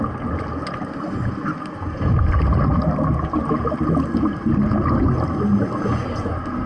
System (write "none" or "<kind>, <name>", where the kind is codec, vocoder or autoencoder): none